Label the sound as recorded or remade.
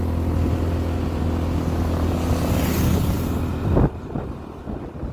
recorded